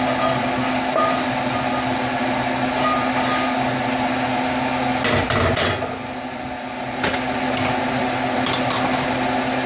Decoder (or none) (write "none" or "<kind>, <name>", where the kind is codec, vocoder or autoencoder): none